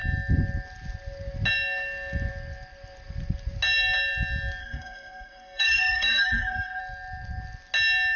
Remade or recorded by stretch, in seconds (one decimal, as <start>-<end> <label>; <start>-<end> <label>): 0.0-4.6 recorded; 4.6-6.8 remade; 6.8-8.2 recorded